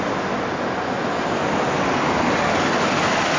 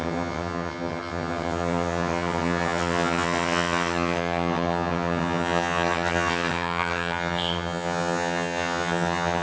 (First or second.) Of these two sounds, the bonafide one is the first